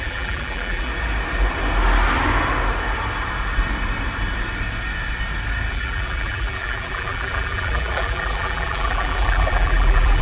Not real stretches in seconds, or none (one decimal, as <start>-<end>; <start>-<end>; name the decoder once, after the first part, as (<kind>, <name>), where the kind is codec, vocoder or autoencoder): 0.0-0.9 (vocoder, BigVGAN v2); 5.7-10.2